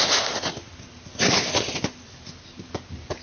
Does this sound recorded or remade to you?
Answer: recorded